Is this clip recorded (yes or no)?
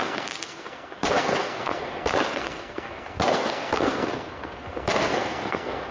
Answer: no